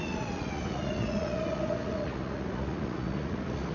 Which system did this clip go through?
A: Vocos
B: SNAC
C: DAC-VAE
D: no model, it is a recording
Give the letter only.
A